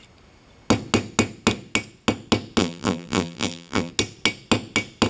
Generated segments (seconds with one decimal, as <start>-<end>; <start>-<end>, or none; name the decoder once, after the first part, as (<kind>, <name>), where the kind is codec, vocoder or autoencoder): 2.6-3.9 (vocoder, BigVGAN v2)

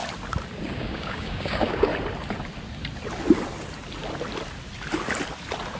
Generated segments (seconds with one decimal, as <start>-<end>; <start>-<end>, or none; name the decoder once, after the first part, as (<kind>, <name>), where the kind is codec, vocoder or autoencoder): 0.6-1.9 (codec, DAC)

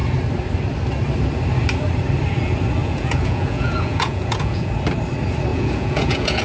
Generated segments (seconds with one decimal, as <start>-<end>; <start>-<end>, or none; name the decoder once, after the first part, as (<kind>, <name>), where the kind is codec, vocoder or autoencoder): 2.8-4.7 (vocoder, Vocos); 5.5-6.4